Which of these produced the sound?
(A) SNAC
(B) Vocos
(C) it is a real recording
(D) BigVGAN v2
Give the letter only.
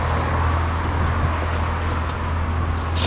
C